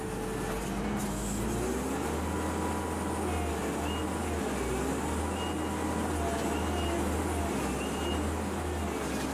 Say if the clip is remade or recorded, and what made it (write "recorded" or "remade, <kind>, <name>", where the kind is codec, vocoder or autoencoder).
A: recorded